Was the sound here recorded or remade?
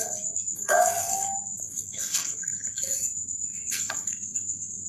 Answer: remade